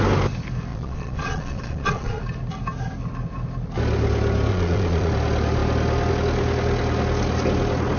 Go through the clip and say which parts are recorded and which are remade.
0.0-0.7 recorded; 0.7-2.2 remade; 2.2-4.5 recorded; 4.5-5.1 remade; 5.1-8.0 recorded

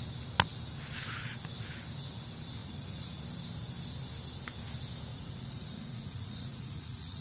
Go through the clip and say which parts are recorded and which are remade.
0.0-2.6 recorded; 2.6-3.2 remade; 3.2-5.1 recorded; 5.1-7.2 remade